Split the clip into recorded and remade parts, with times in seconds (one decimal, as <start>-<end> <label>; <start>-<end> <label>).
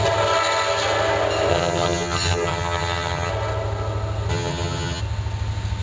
0.0-1.5 recorded; 1.5-3.3 remade; 3.3-4.3 recorded; 4.3-5.0 remade; 5.0-5.8 recorded